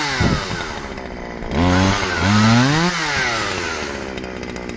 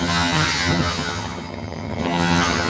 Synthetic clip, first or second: second